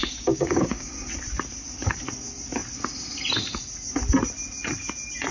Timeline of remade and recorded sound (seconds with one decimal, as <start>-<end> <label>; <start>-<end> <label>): 0.0-0.9 remade; 0.9-5.3 recorded